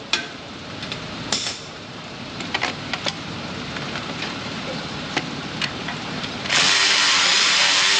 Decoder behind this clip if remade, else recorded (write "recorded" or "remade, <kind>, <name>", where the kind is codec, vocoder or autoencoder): remade, vocoder, BigVGAN v2